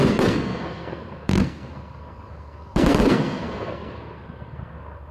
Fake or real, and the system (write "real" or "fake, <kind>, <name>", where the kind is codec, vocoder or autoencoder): fake, codec, SNAC